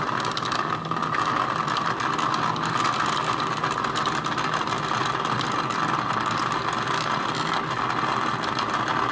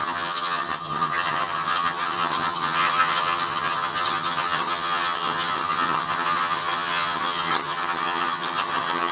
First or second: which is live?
first